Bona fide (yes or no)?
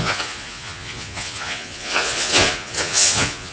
no